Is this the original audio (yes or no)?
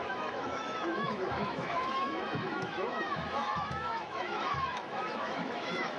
no